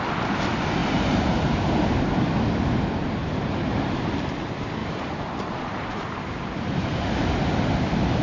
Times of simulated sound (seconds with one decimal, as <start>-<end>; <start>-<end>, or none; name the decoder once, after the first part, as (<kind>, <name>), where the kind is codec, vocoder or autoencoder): 0.8-2.0 (vocoder, BigVGAN v2); 3.2-3.7; 4.8-7.5